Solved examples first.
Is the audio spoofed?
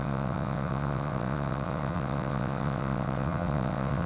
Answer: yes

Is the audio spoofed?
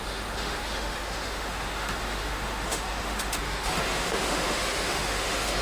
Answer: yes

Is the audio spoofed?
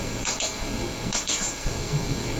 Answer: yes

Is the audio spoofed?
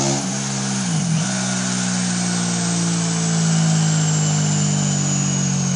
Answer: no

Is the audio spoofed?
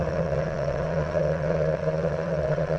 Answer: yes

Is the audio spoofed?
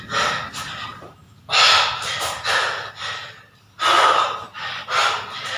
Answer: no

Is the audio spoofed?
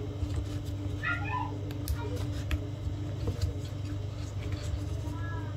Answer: no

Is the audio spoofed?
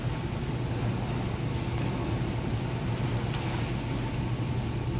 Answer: no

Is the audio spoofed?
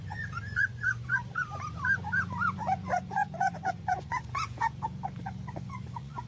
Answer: yes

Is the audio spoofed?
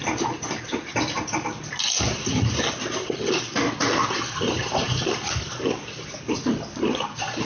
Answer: no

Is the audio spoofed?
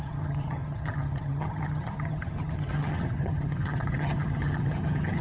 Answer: yes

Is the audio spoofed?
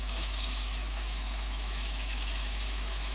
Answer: yes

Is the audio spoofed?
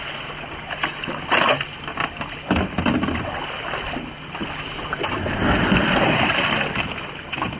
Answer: no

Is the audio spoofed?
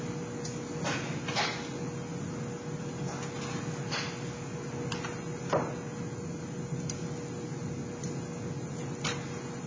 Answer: no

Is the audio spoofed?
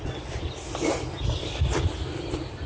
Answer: no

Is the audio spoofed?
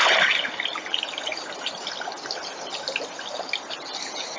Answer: no